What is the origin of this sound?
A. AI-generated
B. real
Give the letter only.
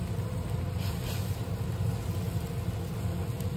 B